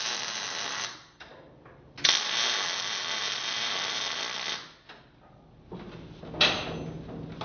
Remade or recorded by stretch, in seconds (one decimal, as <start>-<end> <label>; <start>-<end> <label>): 0.0-7.4 recorded